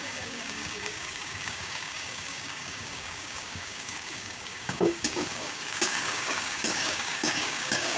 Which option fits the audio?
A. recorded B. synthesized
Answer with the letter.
B